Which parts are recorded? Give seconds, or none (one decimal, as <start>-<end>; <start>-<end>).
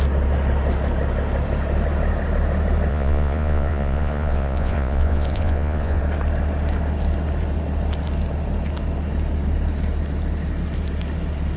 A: 0.0-2.9; 6.0-11.6